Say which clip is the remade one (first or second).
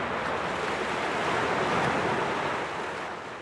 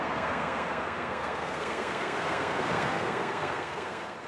second